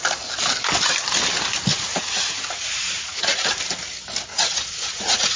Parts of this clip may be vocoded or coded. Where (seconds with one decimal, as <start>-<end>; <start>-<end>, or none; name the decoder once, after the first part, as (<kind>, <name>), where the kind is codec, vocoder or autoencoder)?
1.7-3.5 (vocoder, Vocos); 4.3-5.4